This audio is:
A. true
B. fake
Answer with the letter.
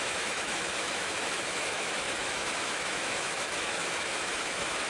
B